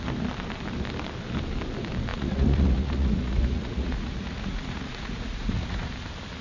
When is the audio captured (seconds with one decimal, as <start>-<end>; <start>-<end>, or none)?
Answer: 0.0-2.1; 5.9-6.4